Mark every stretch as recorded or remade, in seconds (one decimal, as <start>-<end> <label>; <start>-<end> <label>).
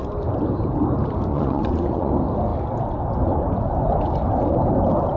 0.0-1.3 recorded; 1.3-2.1 remade; 2.1-5.2 recorded